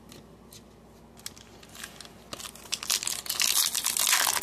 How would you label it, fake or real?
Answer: real